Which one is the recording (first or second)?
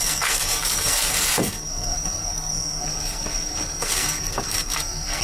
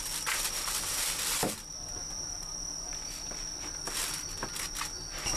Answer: second